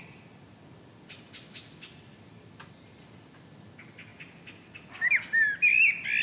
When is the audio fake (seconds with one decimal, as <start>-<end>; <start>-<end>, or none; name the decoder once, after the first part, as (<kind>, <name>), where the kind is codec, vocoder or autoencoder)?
none